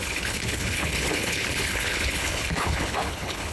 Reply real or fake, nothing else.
fake